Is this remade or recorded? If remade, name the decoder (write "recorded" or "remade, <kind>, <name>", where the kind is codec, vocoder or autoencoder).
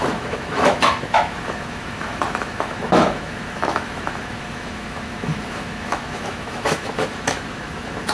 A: remade, autoencoder, DAC-VAE